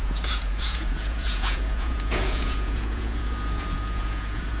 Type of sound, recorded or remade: remade